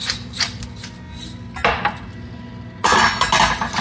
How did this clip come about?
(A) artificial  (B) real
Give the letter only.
B